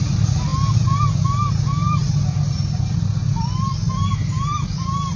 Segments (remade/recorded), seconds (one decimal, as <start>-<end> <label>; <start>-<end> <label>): 0.0-5.2 recorded